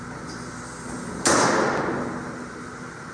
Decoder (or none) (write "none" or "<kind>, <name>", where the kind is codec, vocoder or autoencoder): none